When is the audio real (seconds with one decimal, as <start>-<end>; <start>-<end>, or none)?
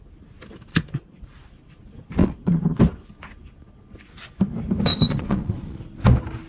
0.0-0.7; 1.2-2.2; 2.8-4.9; 5.8-6.5